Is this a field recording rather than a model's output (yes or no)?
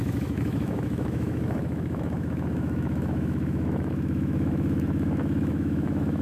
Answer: no